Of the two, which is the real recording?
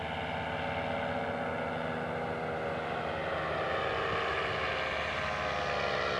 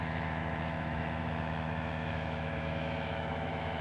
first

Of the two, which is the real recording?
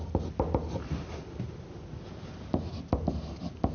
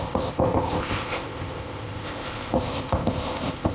first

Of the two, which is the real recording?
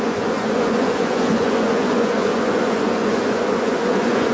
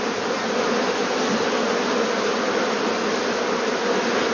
second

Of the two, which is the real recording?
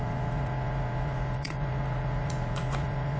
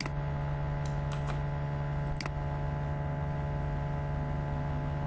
second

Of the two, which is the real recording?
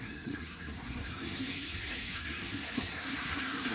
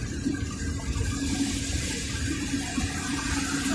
second